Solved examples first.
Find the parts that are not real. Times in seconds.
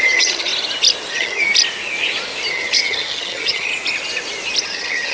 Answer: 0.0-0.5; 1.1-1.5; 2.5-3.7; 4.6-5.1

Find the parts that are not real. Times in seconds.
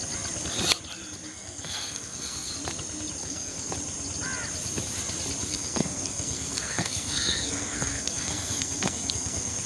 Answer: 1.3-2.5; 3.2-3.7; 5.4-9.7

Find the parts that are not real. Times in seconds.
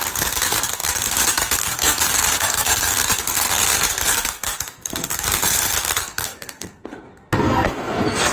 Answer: 0.0-8.3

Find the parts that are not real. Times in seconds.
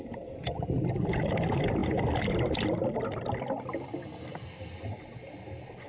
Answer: none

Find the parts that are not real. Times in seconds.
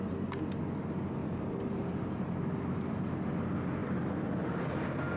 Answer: 1.2-3.3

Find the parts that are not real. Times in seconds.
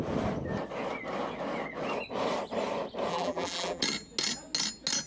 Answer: 3.1-3.8